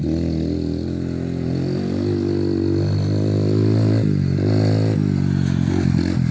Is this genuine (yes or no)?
yes